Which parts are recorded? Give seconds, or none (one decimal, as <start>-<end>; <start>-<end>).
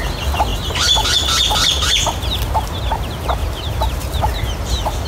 0.0-3.4; 4.2-5.1